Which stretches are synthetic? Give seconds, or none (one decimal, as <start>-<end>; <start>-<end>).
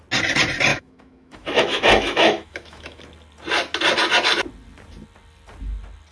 0.7-3.0